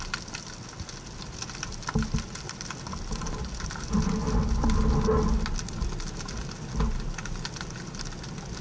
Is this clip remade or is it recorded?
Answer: recorded